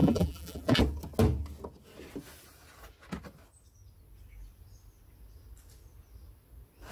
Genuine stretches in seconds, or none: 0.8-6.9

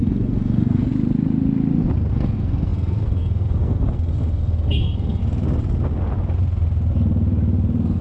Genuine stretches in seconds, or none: 0.9-2.1; 5.2-8.0

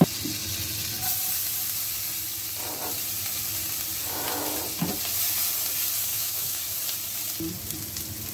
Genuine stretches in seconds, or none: 0.0-6.1; 6.6-8.3

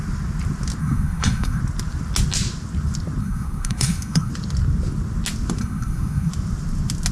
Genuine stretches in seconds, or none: 0.0-0.8; 1.6-3.2; 4.3-5.6; 6.3-7.1

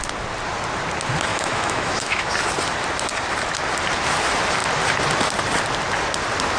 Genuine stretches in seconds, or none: 0.0-1.3; 2.3-6.6

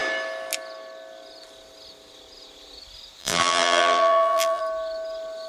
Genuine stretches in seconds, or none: 0.0-3.2; 4.6-5.5

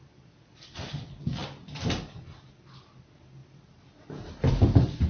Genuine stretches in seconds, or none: 0.0-3.4

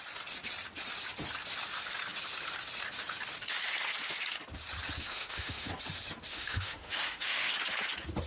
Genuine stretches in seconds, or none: 0.0-5.0; 5.7-6.3; 7.5-8.3